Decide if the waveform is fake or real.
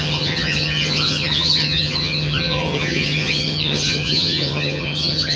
fake